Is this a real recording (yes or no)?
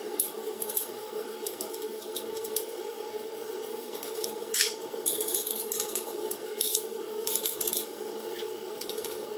no